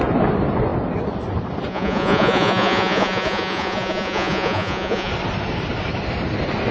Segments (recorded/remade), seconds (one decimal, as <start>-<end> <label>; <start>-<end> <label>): 0.0-1.7 recorded; 1.7-5.1 remade; 5.1-6.7 recorded